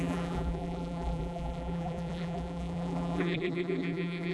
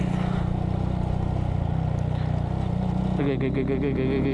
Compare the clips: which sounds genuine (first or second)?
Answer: second